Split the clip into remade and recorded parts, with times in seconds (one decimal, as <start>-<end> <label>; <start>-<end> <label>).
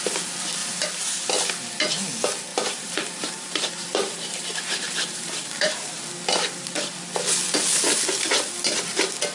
0.0-0.6 recorded; 0.6-1.3 remade; 1.3-2.5 recorded; 2.5-5.9 remade; 5.9-9.3 recorded